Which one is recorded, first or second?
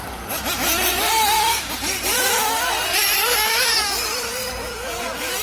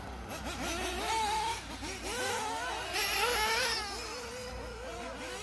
second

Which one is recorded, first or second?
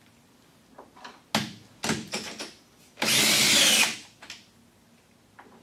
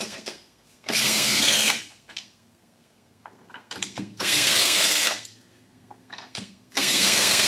first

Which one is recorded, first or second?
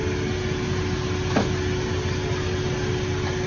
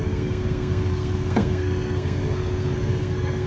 first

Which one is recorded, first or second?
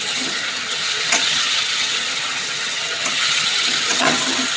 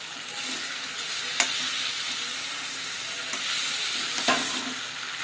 second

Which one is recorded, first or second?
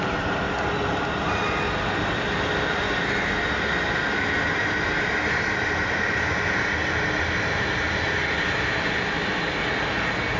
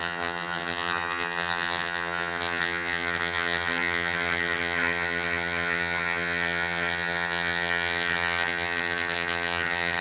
first